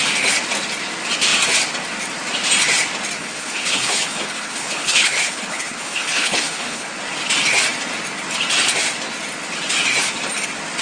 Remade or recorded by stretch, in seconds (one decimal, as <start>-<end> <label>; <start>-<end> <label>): 0.0-3.2 recorded; 3.2-6.9 remade; 6.9-10.8 recorded